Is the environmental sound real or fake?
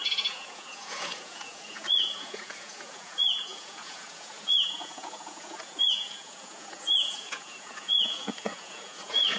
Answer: fake